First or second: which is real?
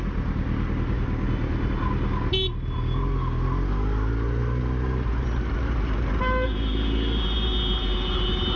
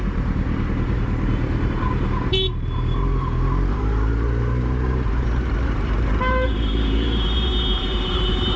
first